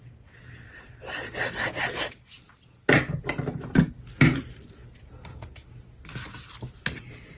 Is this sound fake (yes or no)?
no